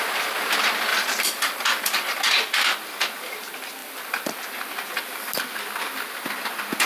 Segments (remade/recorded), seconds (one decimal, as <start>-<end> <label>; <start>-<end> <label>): 0.0-0.9 recorded; 0.9-2.3 remade; 2.3-3.8 recorded; 3.8-5.4 remade; 5.4-6.9 recorded